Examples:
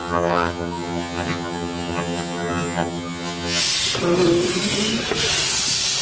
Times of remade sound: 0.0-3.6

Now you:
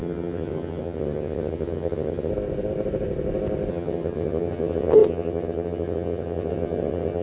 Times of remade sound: 0.0-2.3; 3.7-7.2

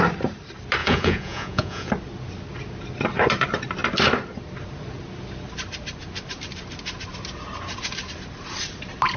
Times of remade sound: 0.8-1.9

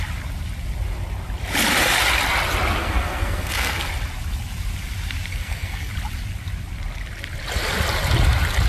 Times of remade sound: 2.8-3.9; 5.3-5.9

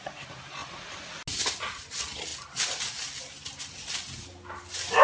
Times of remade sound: none